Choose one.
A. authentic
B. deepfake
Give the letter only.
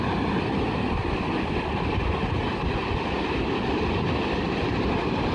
A